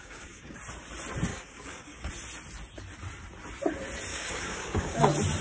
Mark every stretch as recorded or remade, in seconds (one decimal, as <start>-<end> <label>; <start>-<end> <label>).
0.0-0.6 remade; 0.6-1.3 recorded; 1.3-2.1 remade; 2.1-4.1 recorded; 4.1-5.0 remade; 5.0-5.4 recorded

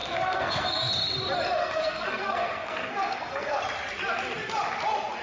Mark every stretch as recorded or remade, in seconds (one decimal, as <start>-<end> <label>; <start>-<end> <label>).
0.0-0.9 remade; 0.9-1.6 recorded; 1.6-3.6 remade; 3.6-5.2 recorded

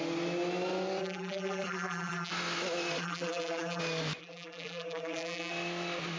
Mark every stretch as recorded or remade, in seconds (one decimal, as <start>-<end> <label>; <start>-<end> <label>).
0.0-1.0 recorded; 1.0-2.3 remade; 2.3-3.0 recorded; 3.0-3.8 remade; 3.8-4.2 recorded; 4.2-5.5 remade; 5.5-6.2 recorded

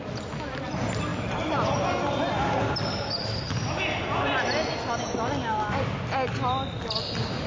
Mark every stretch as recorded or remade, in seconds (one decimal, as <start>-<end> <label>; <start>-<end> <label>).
0.0-7.5 recorded

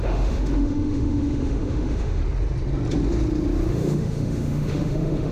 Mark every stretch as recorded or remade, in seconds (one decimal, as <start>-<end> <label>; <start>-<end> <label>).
0.0-2.2 remade; 2.2-3.7 recorded; 3.7-5.3 remade

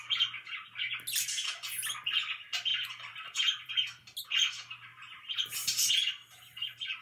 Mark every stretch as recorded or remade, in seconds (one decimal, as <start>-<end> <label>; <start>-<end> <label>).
0.0-2.7 recorded; 2.7-3.7 remade; 3.7-4.9 recorded; 4.9-5.9 remade; 5.9-7.0 recorded

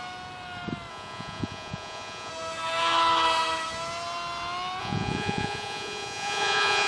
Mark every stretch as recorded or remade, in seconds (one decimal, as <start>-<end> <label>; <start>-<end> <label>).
0.0-0.9 recorded; 0.9-2.3 remade; 2.3-4.8 recorded; 4.8-6.9 remade

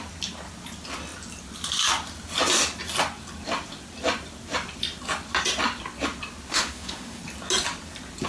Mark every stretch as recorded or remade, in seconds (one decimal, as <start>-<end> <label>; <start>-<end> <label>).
0.0-6.5 recorded; 6.5-7.2 remade; 7.2-8.3 recorded